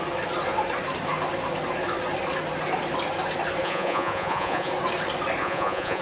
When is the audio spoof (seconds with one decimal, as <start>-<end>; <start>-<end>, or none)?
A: 3.6-4.7; 5.4-6.0